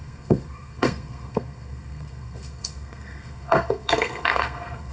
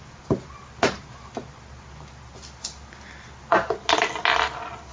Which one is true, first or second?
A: second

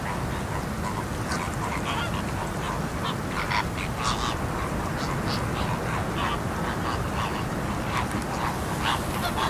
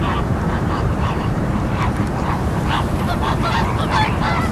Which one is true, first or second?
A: first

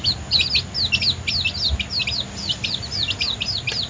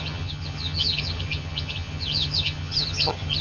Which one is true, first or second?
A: first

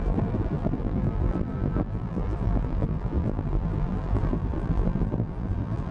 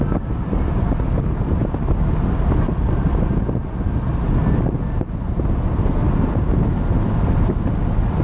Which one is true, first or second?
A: second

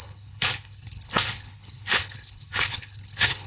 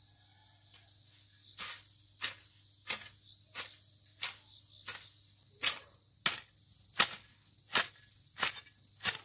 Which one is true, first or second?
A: second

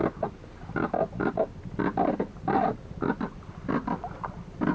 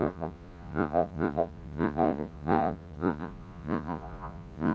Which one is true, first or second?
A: first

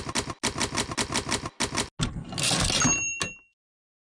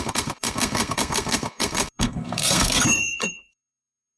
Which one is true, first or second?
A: first